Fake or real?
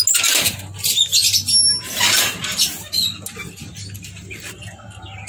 real